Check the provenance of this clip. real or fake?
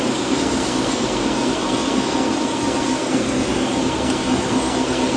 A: fake